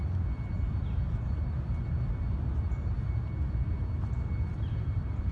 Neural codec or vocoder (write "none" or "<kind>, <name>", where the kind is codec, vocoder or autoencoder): none